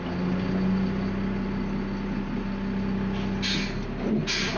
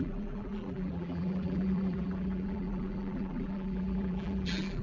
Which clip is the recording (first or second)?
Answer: first